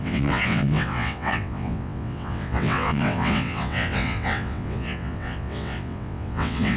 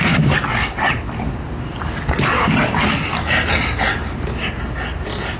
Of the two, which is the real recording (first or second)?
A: second